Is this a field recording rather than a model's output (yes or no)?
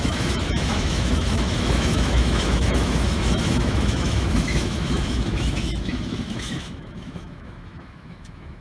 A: no